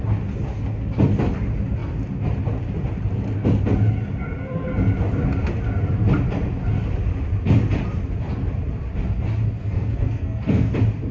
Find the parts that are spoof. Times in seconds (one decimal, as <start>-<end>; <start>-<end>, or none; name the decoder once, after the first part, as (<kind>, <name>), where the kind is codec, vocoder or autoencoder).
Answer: 9.6-10.7 (codec, SNAC)